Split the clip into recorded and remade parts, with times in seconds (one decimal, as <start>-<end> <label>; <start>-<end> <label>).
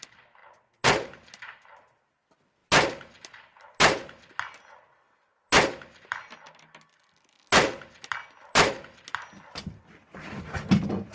0.0-11.1 recorded